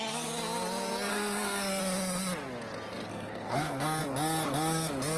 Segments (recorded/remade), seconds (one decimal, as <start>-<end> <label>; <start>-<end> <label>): 0.0-1.1 recorded; 1.1-1.8 remade; 1.8-3.1 recorded; 3.1-4.0 remade; 4.0-5.2 recorded